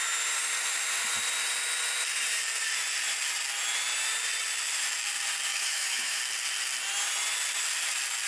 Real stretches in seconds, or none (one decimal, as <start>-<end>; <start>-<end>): 0.0-5.5; 6.2-8.3